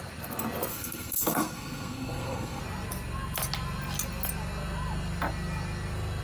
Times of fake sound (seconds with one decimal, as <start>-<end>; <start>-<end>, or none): 0.7-2.6